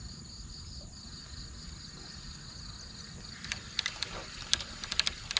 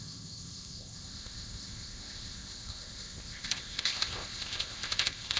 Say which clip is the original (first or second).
first